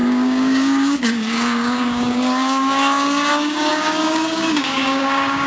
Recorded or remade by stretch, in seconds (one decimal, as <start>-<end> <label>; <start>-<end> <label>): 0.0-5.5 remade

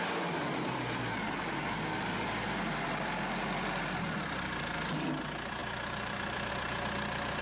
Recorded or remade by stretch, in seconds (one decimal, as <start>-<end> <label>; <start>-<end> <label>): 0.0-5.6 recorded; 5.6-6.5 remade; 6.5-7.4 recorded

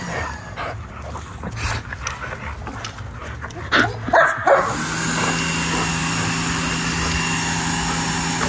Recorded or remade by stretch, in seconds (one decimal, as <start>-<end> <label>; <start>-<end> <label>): 0.0-8.5 recorded

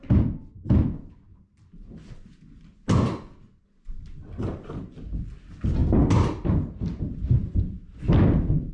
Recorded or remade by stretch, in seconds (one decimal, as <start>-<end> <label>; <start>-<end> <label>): 0.0-8.7 recorded

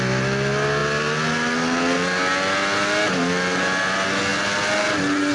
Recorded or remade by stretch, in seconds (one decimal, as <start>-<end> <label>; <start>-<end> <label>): 0.0-5.3 recorded